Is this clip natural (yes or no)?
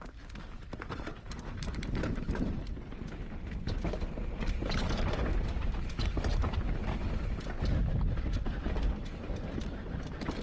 no